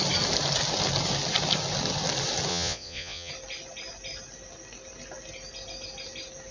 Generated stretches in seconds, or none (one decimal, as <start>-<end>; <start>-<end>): 2.5-3.3